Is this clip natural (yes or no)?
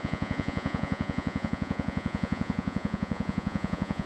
no